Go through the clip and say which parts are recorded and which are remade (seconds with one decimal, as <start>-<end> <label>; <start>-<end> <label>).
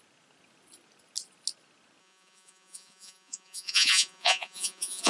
0.0-2.0 recorded; 2.0-5.1 remade